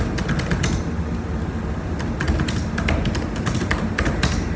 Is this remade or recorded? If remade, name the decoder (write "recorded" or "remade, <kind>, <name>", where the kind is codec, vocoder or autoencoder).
recorded